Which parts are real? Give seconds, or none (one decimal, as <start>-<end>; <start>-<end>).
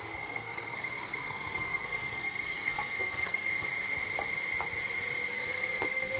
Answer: 3.5-5.3